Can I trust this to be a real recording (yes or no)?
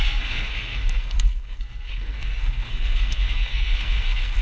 no